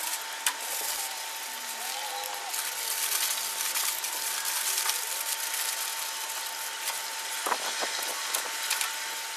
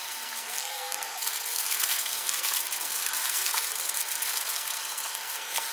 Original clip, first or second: first